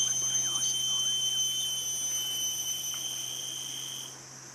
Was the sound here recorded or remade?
recorded